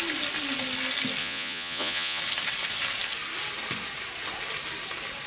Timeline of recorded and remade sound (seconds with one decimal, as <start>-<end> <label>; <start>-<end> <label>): 0.0-1.2 recorded; 1.2-2.2 remade; 2.2-5.3 recorded